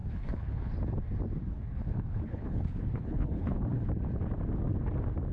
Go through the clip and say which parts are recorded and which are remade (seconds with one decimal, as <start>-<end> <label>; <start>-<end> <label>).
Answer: 0.0-0.7 remade; 0.7-1.5 recorded; 1.5-3.9 remade; 3.9-5.3 recorded

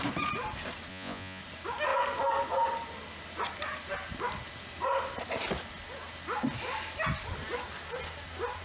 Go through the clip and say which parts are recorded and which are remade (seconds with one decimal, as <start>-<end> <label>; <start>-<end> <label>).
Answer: 0.0-0.9 recorded; 0.9-1.4 remade; 1.4-8.6 recorded

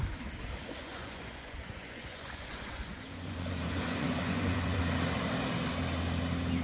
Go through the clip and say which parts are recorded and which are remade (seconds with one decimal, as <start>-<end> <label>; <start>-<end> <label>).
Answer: 0.0-0.8 recorded; 0.8-4.8 remade; 4.8-6.6 recorded

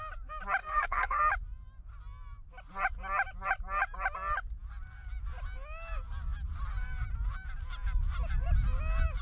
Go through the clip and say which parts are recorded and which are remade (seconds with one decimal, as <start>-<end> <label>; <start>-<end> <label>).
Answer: 0.0-0.6 recorded; 0.6-1.2 remade; 1.2-9.2 recorded

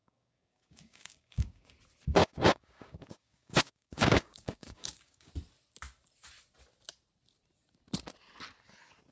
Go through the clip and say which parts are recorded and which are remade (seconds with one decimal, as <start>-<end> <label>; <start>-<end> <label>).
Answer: 0.0-1.8 remade; 1.8-2.2 recorded; 2.2-5.3 remade; 5.3-9.1 recorded